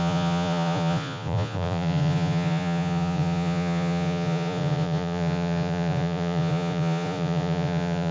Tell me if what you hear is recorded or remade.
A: remade